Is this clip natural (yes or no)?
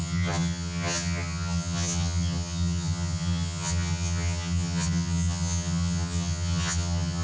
no